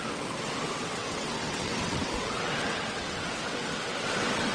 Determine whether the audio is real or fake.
fake